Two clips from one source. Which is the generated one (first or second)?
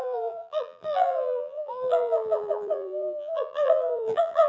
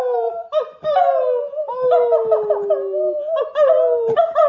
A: first